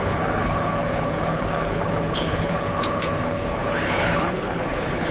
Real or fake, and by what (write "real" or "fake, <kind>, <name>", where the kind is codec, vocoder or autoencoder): fake, codec, HILCodec